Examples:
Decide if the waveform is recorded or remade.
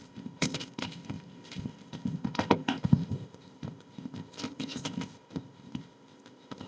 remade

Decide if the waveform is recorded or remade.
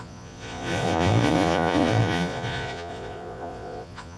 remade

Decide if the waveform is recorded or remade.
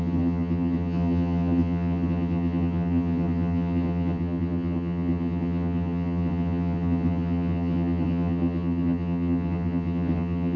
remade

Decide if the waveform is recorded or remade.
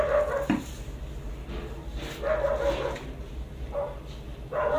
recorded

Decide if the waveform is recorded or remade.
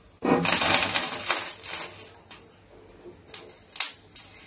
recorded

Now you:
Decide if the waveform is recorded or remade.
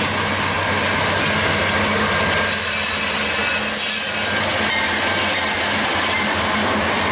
recorded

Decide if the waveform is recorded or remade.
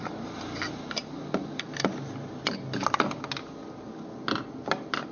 recorded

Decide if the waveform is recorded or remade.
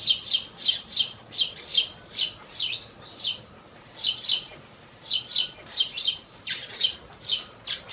recorded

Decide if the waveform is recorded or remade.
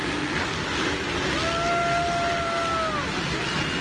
recorded